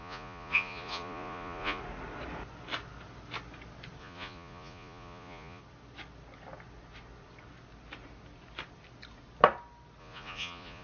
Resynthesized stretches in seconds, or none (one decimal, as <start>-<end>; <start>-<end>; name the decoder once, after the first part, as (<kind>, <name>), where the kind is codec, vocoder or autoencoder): 0.0-1.8 (vocoder, Vocos); 4.0-5.6; 10.0-10.8